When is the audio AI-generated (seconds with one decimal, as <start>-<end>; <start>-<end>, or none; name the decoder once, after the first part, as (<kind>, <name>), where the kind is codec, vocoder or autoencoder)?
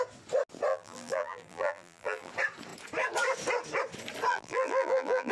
0.7-2.3 (vocoder, BigVGAN v2); 4.3-5.3